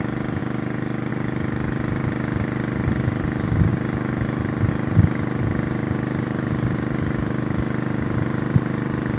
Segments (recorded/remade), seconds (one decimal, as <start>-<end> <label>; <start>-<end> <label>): 0.0-0.4 remade; 0.4-1.1 recorded; 1.1-3.7 remade; 3.7-4.7 recorded; 4.7-9.2 remade